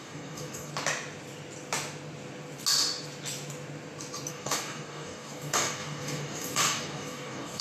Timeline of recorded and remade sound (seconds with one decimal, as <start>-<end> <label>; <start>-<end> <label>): 0.0-0.7 remade; 0.7-4.3 recorded; 4.3-7.6 remade